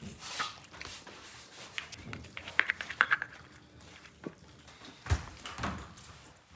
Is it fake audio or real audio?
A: real